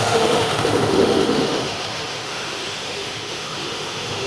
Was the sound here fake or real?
fake